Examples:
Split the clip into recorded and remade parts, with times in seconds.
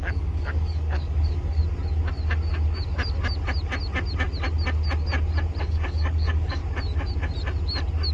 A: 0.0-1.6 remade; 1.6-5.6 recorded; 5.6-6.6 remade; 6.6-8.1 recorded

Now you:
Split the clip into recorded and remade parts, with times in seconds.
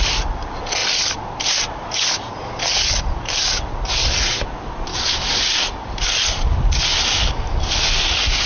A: 0.0-4.9 recorded; 4.9-5.4 remade; 5.4-8.5 recorded